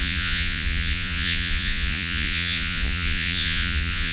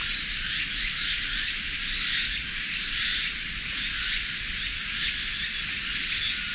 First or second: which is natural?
second